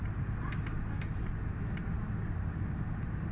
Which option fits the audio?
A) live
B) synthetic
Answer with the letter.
A